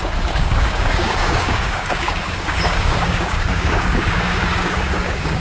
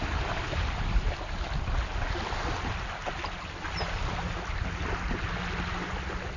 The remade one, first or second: first